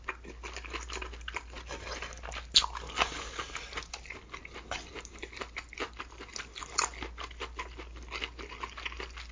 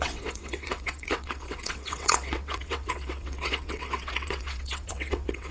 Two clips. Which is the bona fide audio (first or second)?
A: first